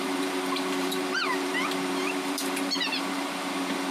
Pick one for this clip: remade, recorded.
remade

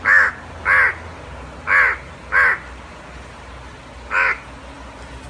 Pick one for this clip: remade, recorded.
recorded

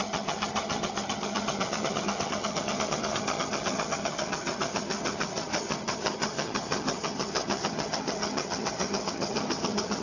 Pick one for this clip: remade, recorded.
remade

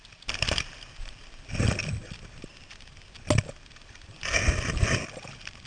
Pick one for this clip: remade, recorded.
recorded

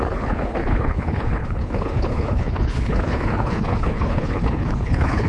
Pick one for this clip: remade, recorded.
remade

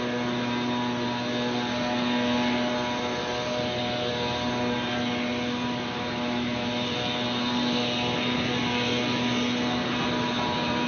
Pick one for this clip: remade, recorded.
recorded